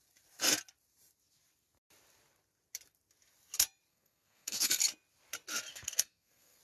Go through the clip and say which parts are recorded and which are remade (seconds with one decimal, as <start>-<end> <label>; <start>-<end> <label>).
0.0-3.9 recorded; 3.9-4.8 remade; 4.8-5.7 recorded; 5.7-6.6 remade